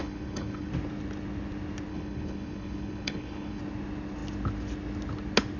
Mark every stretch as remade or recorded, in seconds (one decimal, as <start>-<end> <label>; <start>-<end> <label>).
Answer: 0.0-0.7 remade; 0.7-1.9 recorded; 1.9-3.6 remade; 3.6-5.6 recorded